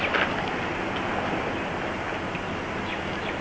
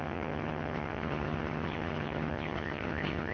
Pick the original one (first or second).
first